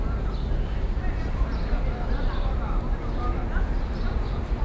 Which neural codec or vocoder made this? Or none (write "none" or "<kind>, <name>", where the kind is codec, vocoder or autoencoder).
none